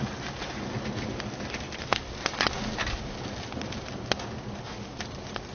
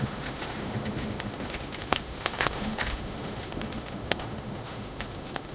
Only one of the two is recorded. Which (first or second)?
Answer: first